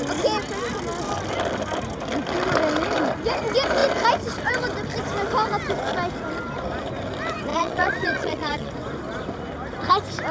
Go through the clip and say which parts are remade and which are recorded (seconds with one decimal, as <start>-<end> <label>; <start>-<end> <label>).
0.0-7.5 recorded; 7.5-8.7 remade; 8.7-10.3 recorded

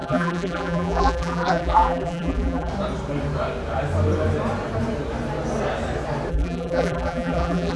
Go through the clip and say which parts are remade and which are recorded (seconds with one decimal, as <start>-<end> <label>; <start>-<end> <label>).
0.0-2.7 remade; 2.7-6.3 recorded; 6.3-7.8 remade

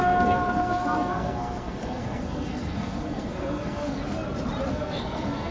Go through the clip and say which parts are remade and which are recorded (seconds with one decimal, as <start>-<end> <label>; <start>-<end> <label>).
0.0-4.0 remade; 4.0-4.7 recorded; 4.7-5.5 remade

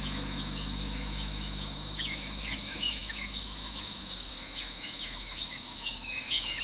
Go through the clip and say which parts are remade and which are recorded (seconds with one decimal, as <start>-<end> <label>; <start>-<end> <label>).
0.0-6.6 remade